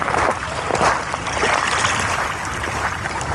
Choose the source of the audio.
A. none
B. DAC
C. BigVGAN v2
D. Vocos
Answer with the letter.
A